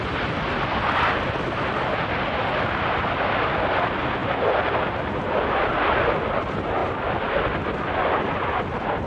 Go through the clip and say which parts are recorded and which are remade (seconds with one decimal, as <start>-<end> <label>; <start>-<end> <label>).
0.0-9.1 recorded